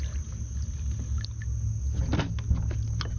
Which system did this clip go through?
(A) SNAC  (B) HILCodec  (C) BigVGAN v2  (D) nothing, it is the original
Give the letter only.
D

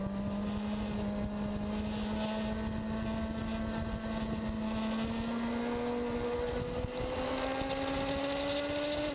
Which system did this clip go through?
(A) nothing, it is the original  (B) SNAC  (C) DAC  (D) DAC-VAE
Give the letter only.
A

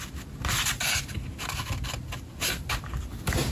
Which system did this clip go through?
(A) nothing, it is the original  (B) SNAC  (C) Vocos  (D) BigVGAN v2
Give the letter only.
A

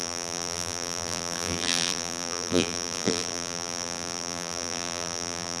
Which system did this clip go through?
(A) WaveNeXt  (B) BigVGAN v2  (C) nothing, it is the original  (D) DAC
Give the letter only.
B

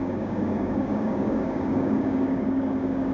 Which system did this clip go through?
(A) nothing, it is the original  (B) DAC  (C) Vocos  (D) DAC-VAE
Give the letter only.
B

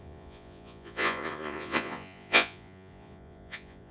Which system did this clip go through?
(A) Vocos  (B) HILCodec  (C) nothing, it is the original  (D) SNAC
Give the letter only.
A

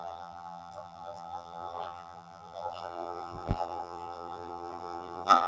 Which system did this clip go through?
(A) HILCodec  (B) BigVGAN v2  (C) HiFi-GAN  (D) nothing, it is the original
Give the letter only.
B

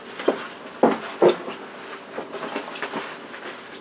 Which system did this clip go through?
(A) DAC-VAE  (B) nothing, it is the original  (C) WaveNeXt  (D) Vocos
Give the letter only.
B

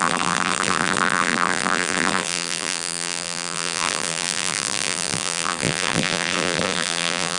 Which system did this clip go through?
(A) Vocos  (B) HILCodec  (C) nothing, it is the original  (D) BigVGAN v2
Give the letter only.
D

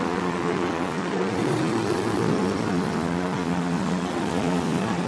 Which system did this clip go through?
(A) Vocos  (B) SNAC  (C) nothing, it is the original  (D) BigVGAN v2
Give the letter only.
A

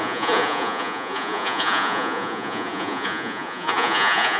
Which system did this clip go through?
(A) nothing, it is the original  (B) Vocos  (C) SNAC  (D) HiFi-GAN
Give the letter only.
B